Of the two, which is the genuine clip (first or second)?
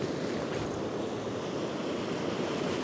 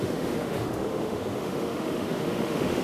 first